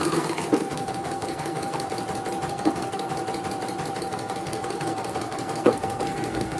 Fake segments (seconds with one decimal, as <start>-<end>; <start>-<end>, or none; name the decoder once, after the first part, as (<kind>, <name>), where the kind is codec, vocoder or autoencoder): 0.0-1.9 (codec, SNAC); 2.5-3.1; 4.0-6.6